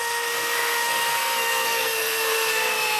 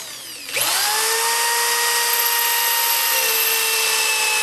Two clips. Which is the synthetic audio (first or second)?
first